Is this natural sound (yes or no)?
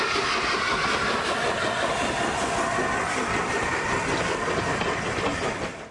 yes